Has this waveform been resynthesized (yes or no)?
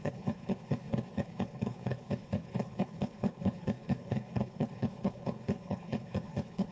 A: yes